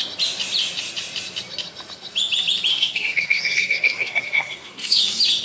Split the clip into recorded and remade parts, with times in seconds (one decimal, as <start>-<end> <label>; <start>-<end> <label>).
0.0-2.7 recorded; 2.7-5.0 remade; 5.0-5.4 recorded